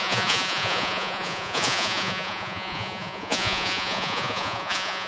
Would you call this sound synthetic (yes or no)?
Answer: yes